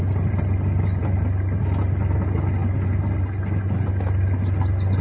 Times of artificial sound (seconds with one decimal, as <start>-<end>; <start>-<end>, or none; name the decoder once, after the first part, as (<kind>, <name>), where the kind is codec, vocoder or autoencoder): none